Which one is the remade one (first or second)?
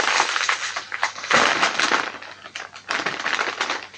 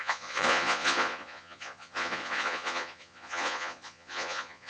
second